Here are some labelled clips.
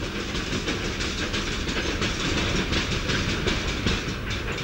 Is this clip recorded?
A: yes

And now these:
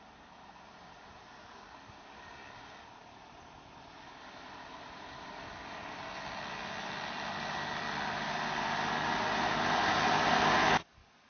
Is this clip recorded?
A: yes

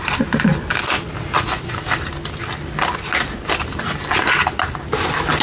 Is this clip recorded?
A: yes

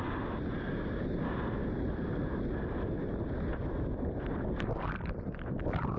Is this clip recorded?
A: yes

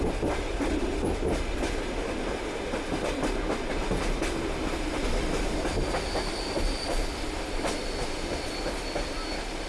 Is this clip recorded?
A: yes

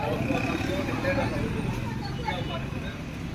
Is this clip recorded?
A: yes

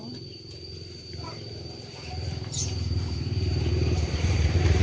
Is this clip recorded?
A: no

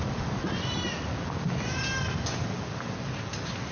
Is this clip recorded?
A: yes